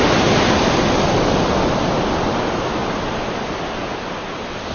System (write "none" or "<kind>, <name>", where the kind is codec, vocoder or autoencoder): none